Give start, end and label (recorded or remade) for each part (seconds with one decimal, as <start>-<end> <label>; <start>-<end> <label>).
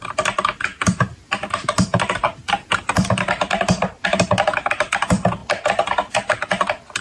0.0-0.7 recorded; 0.7-4.9 remade; 4.9-7.0 recorded